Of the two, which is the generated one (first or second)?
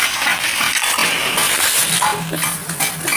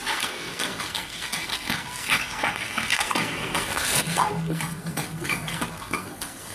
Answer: second